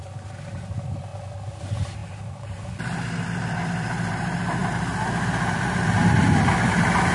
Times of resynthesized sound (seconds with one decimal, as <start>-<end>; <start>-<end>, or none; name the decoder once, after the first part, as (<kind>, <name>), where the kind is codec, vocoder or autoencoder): 2.0-2.6 (vocoder, BigVGAN v2)